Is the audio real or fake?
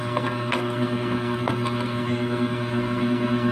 fake